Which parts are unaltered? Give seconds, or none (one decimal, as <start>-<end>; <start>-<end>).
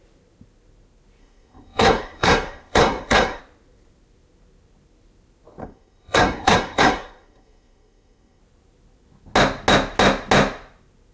0.0-1.2; 3.4-5.6; 8.4-11.1